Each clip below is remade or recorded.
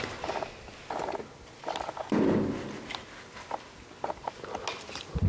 recorded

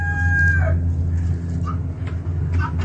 recorded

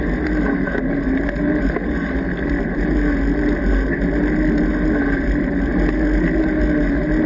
recorded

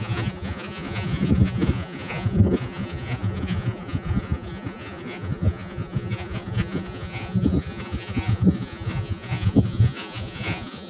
remade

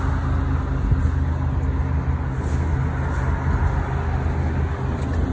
recorded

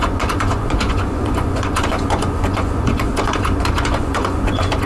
remade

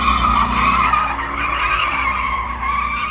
recorded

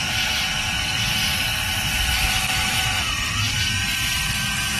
recorded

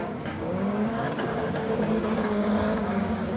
remade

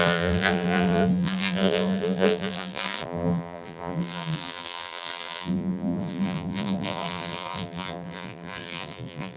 remade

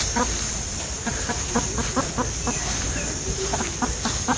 remade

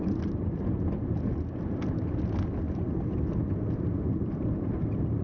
recorded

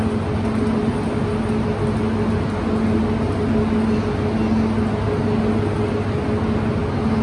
recorded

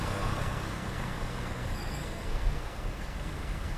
remade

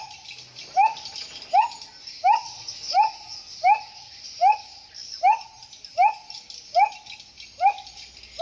recorded